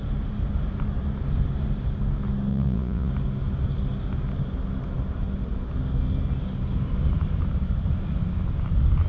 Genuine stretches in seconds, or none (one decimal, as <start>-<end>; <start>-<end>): 0.0-2.5; 3.1-9.1